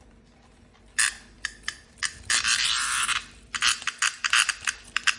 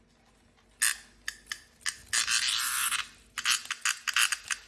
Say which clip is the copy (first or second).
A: first